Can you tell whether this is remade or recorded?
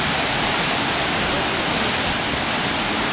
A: recorded